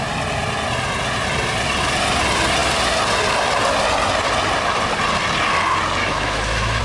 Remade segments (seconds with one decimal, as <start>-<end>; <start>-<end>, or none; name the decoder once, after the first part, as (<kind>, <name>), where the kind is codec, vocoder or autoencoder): 6.0-6.8 (autoencoder, DAC-VAE)